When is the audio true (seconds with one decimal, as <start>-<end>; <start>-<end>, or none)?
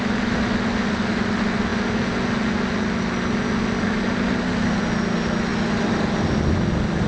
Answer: 0.0-7.1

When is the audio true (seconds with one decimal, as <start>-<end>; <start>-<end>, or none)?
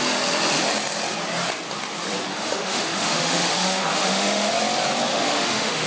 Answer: 0.0-2.3; 4.5-5.1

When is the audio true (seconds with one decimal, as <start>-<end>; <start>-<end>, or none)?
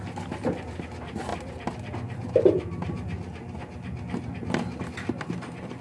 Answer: 0.0-5.8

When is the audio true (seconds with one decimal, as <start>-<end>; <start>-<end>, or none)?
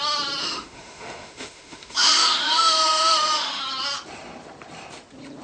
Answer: 0.0-0.4; 3.6-5.4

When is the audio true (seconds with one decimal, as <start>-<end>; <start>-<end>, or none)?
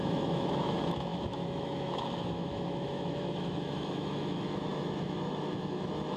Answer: none